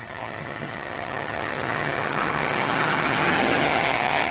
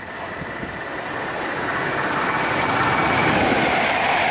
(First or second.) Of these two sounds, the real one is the second